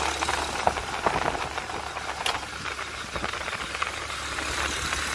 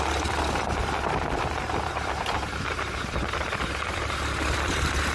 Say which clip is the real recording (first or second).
first